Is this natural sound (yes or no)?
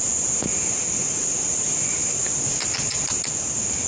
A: yes